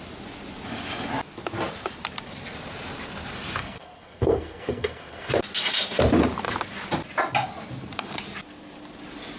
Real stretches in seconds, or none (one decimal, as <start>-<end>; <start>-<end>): 0.0-3.6; 5.3-9.4